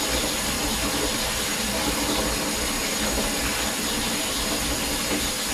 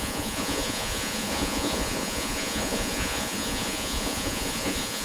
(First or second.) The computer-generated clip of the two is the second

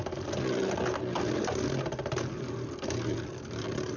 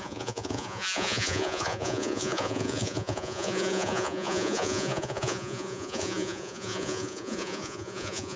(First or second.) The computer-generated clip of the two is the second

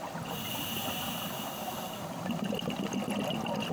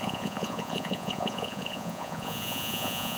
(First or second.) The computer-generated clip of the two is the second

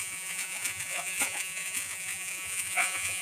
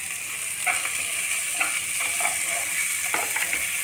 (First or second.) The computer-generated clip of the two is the first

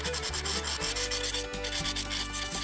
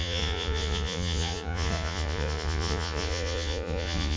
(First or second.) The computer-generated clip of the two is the second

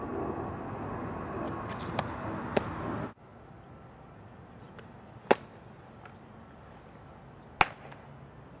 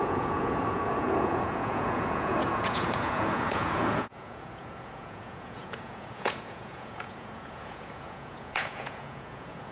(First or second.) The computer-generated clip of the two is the second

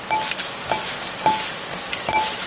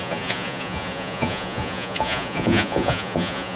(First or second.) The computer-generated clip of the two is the second